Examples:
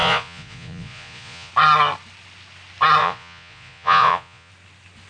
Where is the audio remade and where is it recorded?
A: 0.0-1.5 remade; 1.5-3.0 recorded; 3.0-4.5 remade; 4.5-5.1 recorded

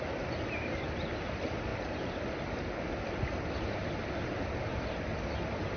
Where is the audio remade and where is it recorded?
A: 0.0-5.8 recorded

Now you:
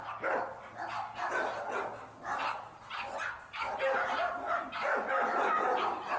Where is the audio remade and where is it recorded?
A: 0.0-6.2 recorded